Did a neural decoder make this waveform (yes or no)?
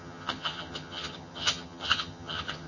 yes